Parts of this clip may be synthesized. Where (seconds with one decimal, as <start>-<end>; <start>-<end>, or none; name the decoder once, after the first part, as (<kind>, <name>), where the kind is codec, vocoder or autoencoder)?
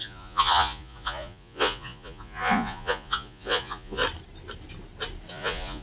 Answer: 0.0-4.0 (vocoder, Vocos); 5.3-5.8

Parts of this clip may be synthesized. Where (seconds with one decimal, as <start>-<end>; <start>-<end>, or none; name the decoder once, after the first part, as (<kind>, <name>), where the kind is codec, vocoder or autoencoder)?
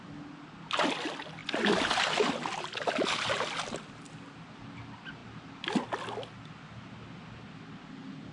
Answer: none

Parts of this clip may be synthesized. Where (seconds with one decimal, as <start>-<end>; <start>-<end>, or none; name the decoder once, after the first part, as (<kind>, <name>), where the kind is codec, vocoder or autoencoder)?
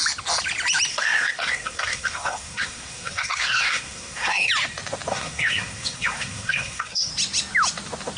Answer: 0.9-4.5 (codec, SNAC); 5.1-7.1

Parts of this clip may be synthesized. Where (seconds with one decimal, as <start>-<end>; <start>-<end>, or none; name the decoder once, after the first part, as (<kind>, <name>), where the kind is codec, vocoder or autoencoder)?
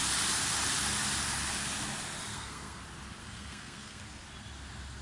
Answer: 2.3-2.8 (codec, SNAC); 3.2-4.0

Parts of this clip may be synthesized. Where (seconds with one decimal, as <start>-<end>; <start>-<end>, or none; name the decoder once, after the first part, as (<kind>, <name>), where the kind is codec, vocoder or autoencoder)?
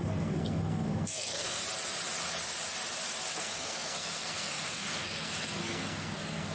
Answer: 0.0-1.6 (codec, SNAC); 3.4-6.5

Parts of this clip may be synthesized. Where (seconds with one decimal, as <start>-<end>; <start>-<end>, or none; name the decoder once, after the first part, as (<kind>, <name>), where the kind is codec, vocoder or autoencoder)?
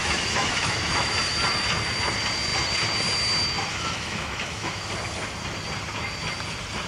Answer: 0.0-1.1 (autoencoder, DAC-VAE); 3.7-4.9